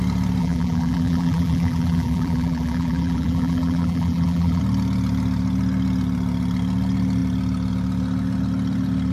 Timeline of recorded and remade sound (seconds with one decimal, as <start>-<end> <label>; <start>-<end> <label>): 0.0-0.4 recorded; 0.4-4.6 remade; 4.6-9.1 recorded